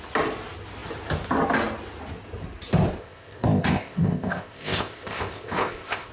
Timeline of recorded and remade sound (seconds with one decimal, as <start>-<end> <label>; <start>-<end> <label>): 0.0-3.0 recorded; 3.0-6.1 remade